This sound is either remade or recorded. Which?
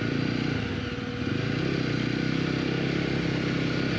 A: recorded